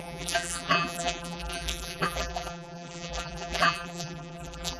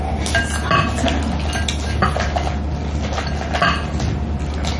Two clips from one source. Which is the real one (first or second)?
second